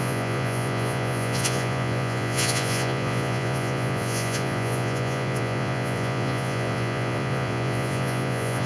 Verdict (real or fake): fake